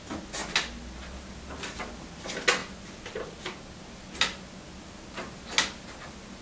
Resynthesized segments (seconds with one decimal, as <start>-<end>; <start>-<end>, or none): none